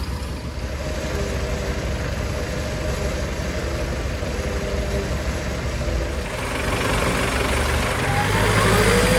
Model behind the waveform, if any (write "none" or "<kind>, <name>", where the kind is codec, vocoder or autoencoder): none